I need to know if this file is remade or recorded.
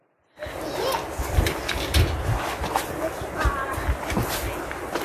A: recorded